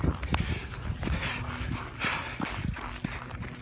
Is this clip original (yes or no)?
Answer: yes